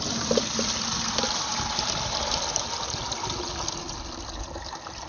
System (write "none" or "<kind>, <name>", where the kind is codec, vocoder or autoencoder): none